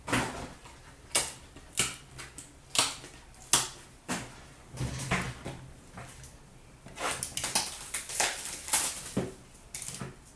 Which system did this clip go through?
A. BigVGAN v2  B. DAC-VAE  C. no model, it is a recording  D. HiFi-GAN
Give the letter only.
C